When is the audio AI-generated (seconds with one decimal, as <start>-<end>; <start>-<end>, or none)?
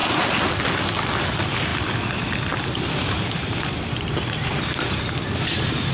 1.7-5.0